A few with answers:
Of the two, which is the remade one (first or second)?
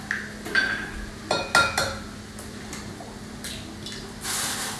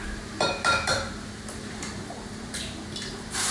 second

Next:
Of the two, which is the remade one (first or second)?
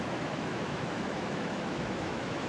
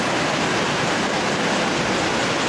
first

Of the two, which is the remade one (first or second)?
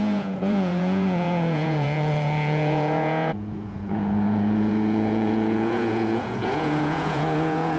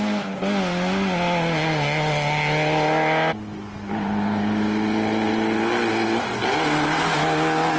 first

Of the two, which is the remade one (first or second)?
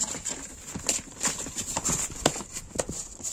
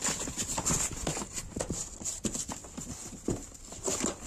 first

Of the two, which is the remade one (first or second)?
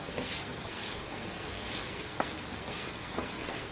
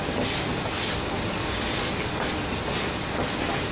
first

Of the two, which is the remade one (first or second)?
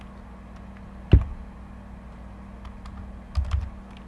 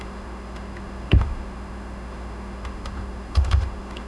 second